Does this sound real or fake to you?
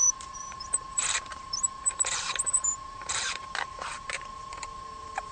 fake